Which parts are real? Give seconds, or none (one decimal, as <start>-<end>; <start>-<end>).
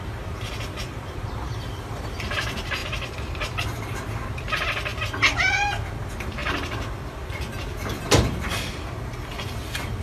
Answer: 4.9-5.9